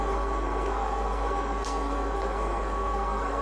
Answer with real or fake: fake